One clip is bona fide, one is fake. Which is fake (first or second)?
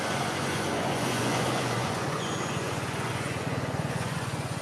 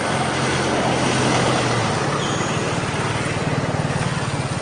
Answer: first